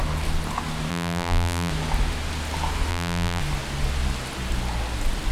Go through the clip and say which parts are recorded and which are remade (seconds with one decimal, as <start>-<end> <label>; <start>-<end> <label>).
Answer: 0.0-0.9 recorded; 0.9-1.7 remade; 1.7-2.9 recorded; 2.9-3.4 remade; 3.4-5.3 recorded

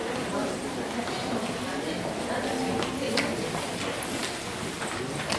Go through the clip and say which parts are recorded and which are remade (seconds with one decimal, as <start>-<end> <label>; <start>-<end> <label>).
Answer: 0.0-5.4 recorded